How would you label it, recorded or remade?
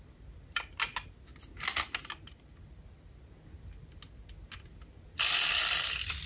recorded